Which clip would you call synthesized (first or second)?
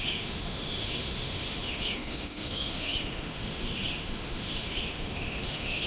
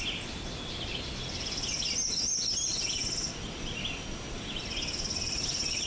first